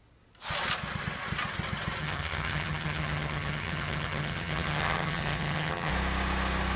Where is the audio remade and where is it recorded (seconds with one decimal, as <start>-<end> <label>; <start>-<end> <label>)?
0.0-2.0 recorded; 2.0-5.9 remade; 5.9-6.8 recorded